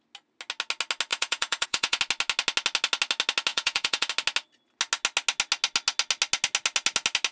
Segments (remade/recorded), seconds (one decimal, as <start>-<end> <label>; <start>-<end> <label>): 0.0-1.1 recorded; 1.1-2.0 remade; 2.0-3.5 recorded; 3.5-4.1 remade; 4.1-7.3 recorded